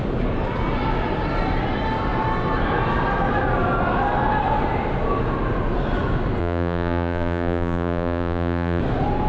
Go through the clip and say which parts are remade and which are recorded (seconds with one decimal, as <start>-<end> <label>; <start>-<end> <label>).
0.0-6.4 recorded; 6.4-8.8 remade; 8.8-9.3 recorded